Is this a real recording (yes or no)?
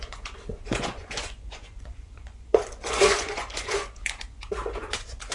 no